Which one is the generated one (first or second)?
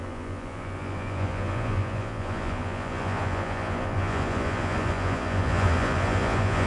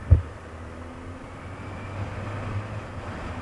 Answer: first